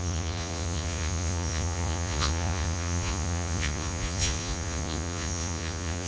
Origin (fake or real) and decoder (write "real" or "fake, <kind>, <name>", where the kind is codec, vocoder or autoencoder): fake, vocoder, Vocos